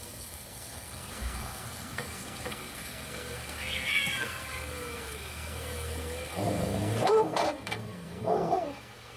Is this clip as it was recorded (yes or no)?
no